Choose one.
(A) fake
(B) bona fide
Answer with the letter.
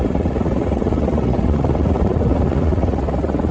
A